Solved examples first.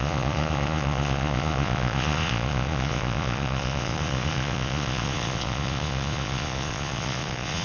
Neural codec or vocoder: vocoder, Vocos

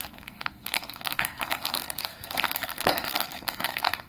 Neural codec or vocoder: codec, SNAC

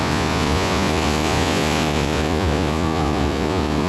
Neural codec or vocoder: vocoder, Vocos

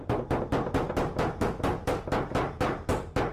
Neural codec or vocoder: vocoder, BigVGAN v2